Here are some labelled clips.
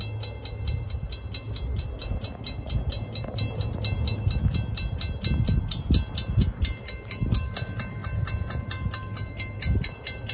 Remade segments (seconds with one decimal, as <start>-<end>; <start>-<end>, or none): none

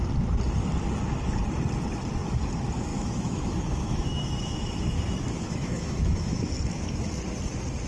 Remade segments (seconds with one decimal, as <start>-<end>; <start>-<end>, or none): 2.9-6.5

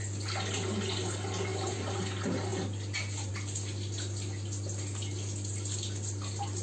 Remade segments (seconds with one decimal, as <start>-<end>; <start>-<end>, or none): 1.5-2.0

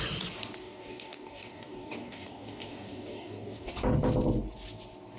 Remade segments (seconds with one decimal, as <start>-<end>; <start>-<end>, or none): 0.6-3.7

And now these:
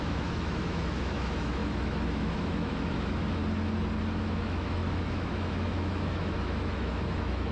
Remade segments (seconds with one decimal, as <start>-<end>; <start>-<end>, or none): 0.0-3.4; 4.2-7.5